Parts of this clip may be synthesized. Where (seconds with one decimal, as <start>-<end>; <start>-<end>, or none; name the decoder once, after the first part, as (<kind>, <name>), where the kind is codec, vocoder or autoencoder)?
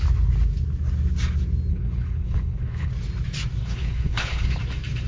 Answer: 1.7-2.9 (codec, HILCodec); 3.6-4.6